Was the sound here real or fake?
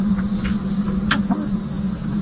real